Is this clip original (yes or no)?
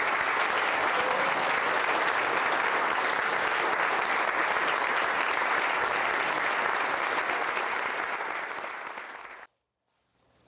yes